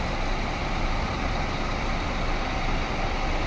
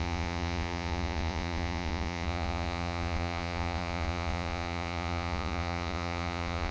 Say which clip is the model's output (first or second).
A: second